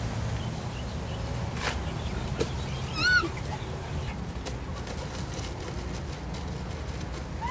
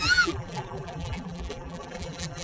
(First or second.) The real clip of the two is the first